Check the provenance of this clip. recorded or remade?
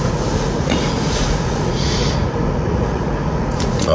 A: remade